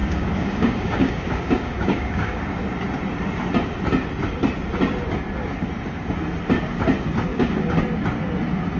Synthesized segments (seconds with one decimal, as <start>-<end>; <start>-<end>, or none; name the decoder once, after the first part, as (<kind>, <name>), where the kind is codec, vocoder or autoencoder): 0.0-2.4 (codec, DAC); 7.3-7.8